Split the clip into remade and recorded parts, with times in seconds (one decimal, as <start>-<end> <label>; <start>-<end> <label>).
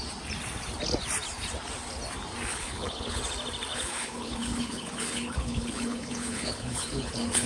0.0-2.5 recorded; 2.5-3.2 remade; 3.2-3.7 recorded; 3.7-7.5 remade